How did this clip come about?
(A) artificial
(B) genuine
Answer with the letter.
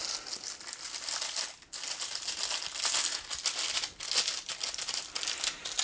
B